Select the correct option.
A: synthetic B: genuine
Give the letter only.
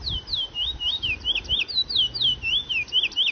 B